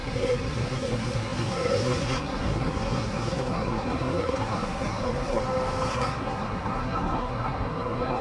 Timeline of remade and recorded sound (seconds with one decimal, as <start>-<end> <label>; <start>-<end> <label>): 0.0-5.4 remade; 5.4-5.9 recorded; 5.9-8.2 remade